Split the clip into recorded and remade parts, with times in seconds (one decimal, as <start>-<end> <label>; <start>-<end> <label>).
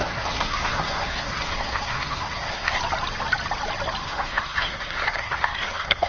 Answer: 0.0-2.8 remade; 2.8-4.0 recorded; 4.0-6.1 remade